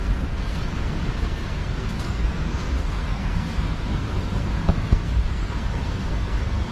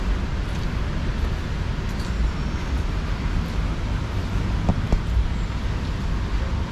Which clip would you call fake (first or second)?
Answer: first